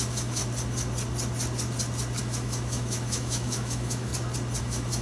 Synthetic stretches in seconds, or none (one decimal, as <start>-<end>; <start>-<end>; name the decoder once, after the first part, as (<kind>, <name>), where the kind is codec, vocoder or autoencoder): 0.0-0.4 (autoencoder, DAC-VAE); 2.2-4.1; 4.6-5.0